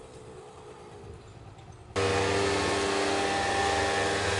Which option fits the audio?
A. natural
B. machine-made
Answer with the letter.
A